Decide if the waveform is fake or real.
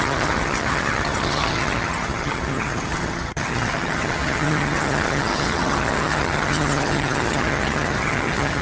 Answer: fake